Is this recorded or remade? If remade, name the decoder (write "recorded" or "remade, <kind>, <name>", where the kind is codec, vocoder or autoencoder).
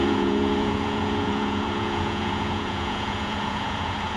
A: remade, vocoder, Vocos